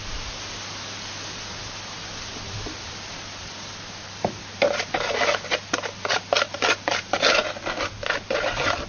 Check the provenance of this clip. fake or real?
real